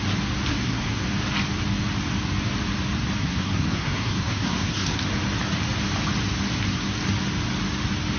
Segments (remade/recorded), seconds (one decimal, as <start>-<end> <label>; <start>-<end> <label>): 0.0-0.5 recorded; 0.5-1.0 remade; 1.0-3.2 recorded; 3.2-5.0 remade; 5.0-8.2 recorded